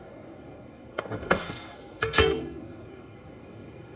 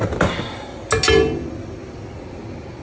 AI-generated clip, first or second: first